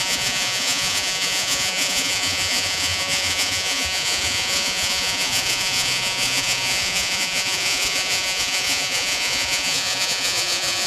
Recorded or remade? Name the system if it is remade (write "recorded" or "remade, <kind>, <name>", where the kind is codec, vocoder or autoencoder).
remade, vocoder, Vocos